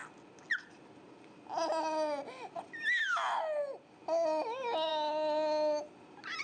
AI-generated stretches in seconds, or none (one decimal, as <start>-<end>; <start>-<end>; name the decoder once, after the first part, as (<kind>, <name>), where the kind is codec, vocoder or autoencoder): none